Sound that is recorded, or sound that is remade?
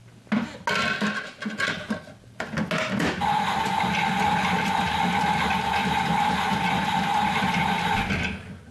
recorded